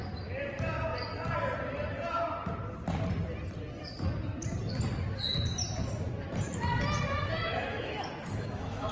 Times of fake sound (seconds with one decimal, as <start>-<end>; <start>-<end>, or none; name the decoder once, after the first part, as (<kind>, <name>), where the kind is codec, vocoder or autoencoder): 7.5-8.9 (autoencoder, DAC-VAE)

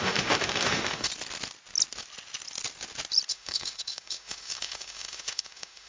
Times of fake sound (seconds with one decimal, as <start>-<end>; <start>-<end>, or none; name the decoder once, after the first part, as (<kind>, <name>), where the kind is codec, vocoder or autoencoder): 0.0-1.1 (autoencoder, DAC-VAE); 3.3-5.9

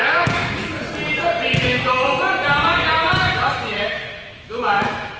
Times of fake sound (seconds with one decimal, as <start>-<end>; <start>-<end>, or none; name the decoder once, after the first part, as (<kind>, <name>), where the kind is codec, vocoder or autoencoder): 0.0-0.4 (autoencoder, DAC-VAE); 3.3-5.2

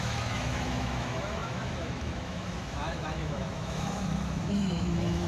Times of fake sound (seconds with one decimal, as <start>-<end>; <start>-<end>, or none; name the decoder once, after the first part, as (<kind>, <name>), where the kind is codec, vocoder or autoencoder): 0.0-5.3 (autoencoder, DAC-VAE)

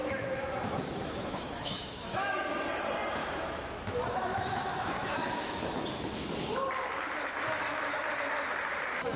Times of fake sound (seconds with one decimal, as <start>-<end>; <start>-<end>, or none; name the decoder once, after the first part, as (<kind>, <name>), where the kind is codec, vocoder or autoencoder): 0.0-2.4 (autoencoder, DAC-VAE); 3.2-6.3

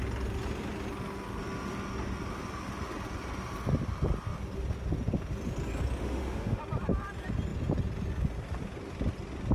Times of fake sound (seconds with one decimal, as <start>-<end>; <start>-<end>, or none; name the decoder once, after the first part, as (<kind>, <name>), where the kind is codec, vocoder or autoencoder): 6.0-6.6 (autoencoder, DAC-VAE)